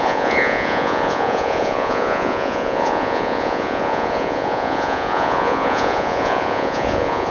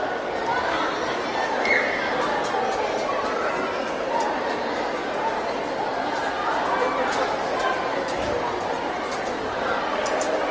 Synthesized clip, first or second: first